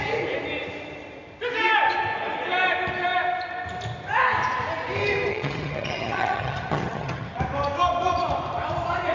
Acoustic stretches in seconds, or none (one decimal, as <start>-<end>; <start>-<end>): 0.0-5.3; 7.4-9.1